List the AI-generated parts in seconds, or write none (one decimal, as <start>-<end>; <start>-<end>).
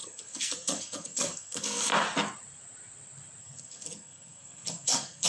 0.0-1.9; 3.4-5.3